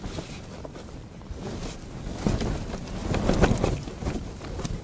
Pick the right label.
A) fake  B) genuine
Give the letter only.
B